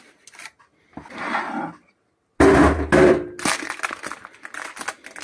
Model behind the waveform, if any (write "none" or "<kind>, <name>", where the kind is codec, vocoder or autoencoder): none